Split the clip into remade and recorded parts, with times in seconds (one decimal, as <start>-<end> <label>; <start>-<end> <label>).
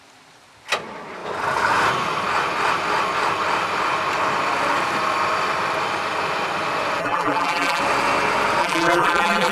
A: 0.0-7.0 recorded; 7.0-7.8 remade; 7.8-8.6 recorded; 8.6-9.5 remade